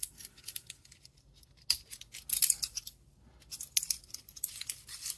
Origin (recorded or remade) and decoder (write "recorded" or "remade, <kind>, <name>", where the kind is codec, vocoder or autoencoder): recorded